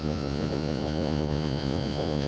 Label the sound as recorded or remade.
remade